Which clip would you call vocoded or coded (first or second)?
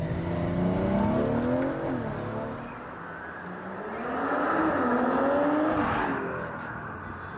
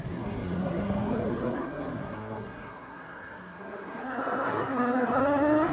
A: second